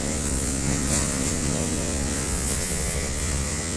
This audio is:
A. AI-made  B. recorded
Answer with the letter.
A